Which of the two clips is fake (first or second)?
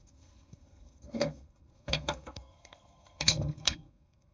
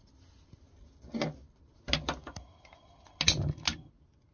first